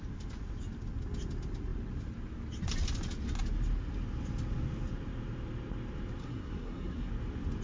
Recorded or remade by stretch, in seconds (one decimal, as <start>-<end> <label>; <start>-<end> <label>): 0.0-6.2 recorded; 6.2-7.1 remade; 7.1-7.6 recorded